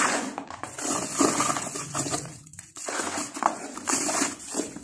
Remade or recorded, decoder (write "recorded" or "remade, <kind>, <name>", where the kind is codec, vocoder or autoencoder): remade, vocoder, Vocos